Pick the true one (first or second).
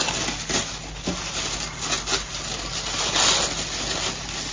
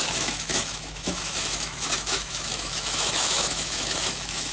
first